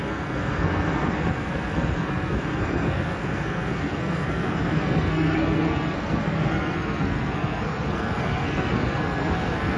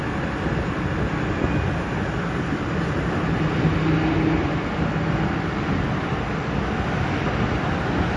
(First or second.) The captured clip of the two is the second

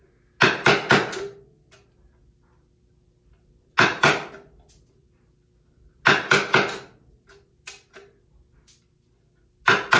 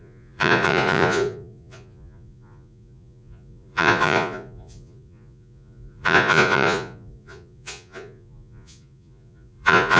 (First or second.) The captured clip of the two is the first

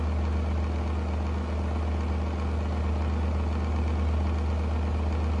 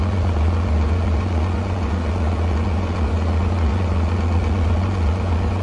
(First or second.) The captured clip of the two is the first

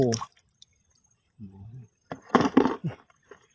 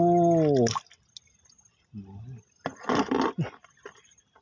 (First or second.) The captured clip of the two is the second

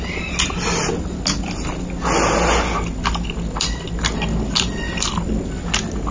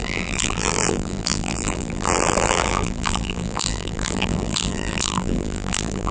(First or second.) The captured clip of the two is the first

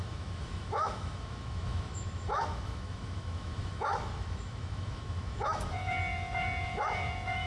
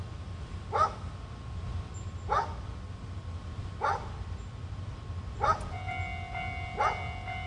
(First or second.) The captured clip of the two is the second